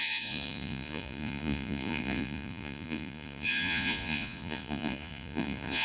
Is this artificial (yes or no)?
yes